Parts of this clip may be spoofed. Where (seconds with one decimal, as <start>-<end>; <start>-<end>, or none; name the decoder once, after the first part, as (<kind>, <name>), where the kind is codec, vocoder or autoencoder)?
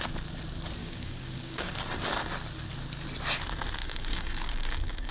0.8-1.7 (codec, DAC); 3.8-5.1